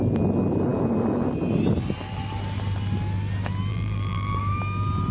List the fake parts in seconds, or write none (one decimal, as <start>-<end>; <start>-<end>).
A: 3.7-4.4